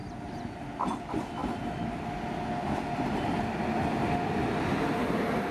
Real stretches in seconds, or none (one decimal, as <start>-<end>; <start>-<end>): 0.0-5.5